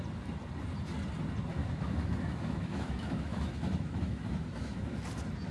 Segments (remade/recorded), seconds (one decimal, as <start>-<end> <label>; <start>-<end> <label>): 0.0-1.6 recorded; 1.6-4.9 remade; 4.9-5.5 recorded